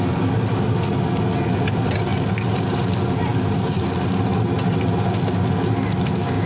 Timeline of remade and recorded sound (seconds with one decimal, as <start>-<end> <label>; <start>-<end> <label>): 0.0-6.5 recorded